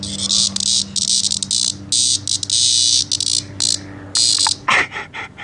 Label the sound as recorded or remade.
recorded